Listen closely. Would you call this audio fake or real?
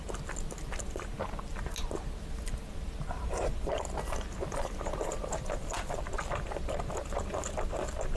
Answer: real